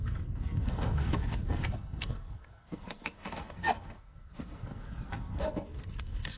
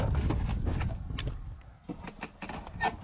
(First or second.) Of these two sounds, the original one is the second